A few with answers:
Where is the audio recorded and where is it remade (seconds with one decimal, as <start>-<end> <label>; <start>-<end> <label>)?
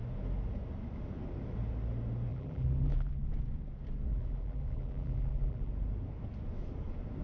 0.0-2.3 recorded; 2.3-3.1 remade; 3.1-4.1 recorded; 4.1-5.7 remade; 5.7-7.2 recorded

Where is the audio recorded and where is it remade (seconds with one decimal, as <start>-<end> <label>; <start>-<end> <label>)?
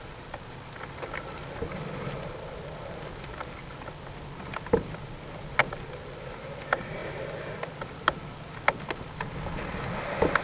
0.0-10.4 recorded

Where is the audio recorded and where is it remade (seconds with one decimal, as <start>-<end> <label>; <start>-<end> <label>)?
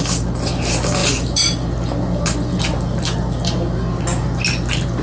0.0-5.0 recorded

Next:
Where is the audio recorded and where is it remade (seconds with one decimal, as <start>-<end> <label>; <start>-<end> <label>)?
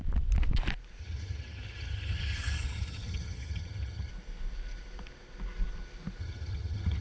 0.0-1.0 recorded; 1.0-4.1 remade; 4.1-6.2 recorded; 6.2-7.0 remade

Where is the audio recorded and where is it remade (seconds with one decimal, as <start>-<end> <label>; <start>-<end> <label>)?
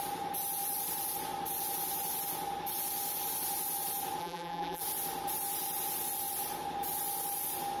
0.0-4.2 recorded; 4.2-4.8 remade; 4.8-7.8 recorded